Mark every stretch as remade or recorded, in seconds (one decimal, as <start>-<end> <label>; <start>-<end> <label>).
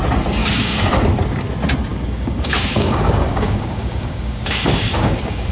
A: 0.0-0.4 recorded; 0.4-0.9 remade; 0.9-1.9 recorded; 1.9-5.5 remade